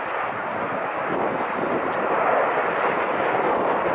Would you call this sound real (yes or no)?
yes